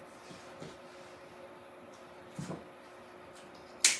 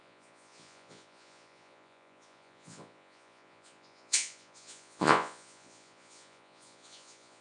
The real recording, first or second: first